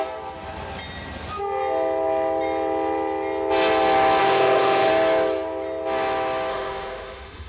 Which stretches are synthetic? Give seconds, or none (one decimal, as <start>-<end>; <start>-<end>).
4.2-4.9; 6.5-7.5